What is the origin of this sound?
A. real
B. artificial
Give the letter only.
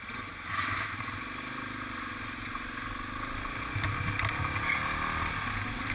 A